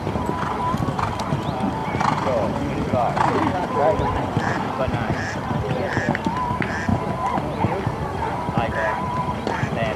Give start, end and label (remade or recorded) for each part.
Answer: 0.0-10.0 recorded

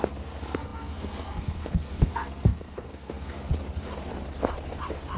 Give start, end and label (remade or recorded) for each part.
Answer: 0.0-3.5 remade; 3.5-5.2 recorded